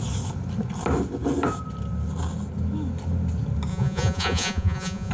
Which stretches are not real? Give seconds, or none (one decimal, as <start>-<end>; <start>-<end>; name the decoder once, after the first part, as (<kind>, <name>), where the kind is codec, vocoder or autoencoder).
3.7-5.1 (vocoder, Vocos)